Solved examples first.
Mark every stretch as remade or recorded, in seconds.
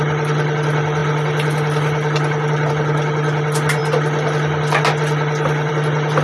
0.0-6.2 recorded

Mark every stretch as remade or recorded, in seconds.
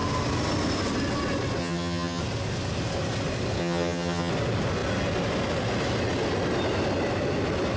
0.0-1.6 recorded; 1.6-2.2 remade; 2.2-3.6 recorded; 3.6-4.3 remade; 4.3-7.8 recorded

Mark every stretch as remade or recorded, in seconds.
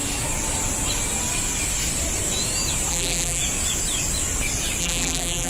0.0-2.9 recorded; 2.9-3.4 remade; 3.4-4.8 recorded; 4.8-5.5 remade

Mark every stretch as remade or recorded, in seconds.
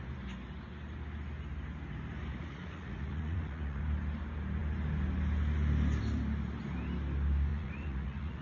0.0-2.3 recorded; 2.3-3.8 remade; 3.8-7.5 recorded; 7.5-8.4 remade